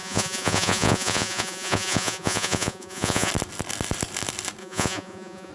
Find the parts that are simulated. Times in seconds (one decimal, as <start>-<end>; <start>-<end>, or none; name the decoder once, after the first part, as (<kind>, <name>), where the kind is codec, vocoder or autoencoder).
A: 0.0-3.3 (vocoder, Vocos); 4.6-5.5